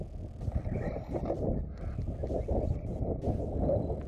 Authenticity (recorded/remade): recorded